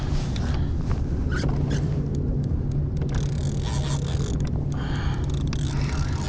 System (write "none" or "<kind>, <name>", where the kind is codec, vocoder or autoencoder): none